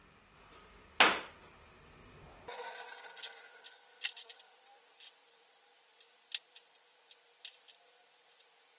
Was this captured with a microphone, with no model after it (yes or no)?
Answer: yes